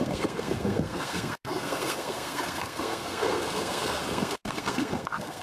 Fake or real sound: fake